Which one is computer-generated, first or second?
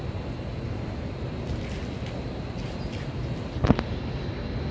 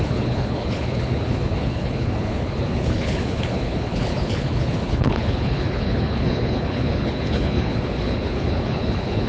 second